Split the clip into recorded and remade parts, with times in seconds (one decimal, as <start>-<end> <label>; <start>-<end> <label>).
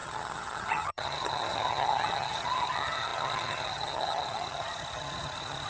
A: 0.0-5.7 remade